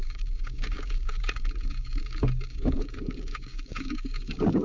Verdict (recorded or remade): remade